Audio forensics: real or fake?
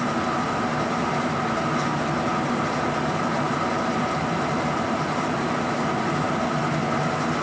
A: real